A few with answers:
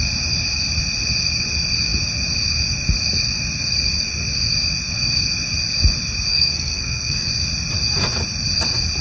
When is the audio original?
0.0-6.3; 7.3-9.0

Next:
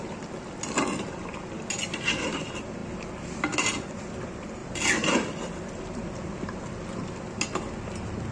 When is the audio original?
0.0-4.6; 6.7-8.3

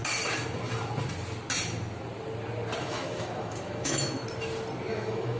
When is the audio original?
0.0-2.8; 4.2-4.9

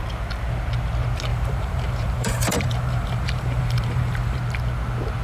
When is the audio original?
0.0-1.3; 4.4-5.2

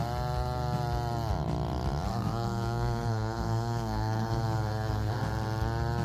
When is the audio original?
0.0-2.1; 5.1-6.0

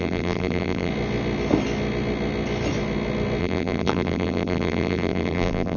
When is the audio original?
0.9-3.4

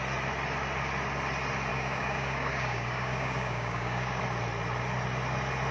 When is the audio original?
0.0-1.7; 4.2-5.7

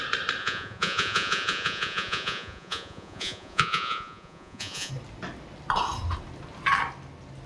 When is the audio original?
0.0-0.4; 4.9-7.5